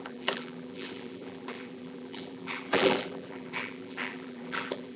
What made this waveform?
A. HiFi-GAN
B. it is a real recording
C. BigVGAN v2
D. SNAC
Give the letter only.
C